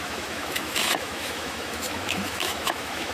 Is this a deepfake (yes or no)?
yes